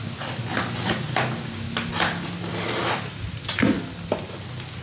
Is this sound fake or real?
real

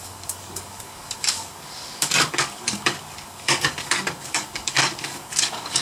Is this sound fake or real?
fake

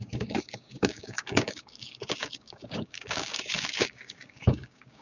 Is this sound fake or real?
fake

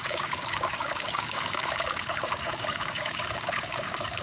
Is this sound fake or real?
fake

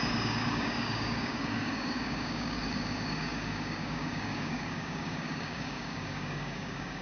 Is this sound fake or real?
fake